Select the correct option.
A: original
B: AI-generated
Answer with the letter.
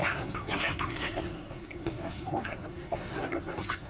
B